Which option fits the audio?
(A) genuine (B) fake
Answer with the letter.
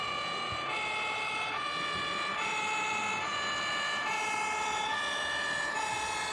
B